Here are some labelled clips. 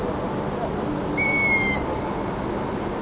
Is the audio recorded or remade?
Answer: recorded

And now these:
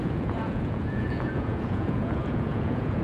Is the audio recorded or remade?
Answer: remade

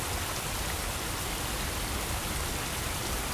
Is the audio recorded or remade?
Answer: recorded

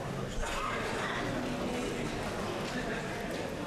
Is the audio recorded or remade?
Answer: recorded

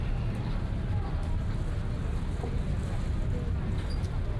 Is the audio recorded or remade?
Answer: recorded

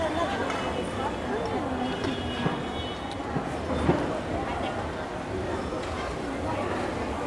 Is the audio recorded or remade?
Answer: recorded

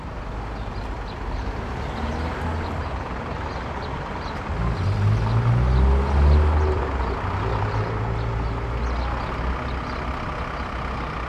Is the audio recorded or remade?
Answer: recorded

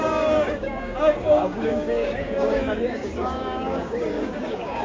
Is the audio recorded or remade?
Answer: remade